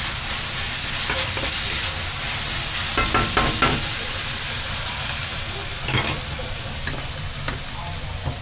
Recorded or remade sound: recorded